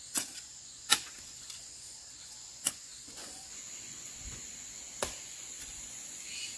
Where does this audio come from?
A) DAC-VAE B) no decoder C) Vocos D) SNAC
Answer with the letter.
C